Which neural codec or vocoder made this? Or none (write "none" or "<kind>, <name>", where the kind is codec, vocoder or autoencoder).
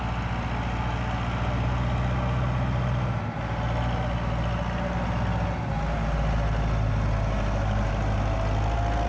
none